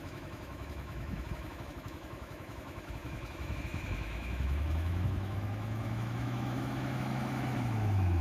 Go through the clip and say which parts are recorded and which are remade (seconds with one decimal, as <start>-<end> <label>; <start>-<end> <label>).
0.0-8.2 remade